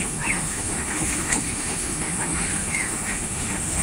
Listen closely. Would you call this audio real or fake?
fake